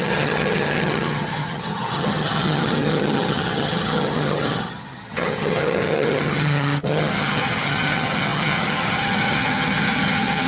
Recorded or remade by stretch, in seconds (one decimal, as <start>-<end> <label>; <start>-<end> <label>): 0.0-10.5 remade